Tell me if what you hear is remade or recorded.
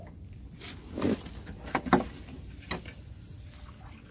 recorded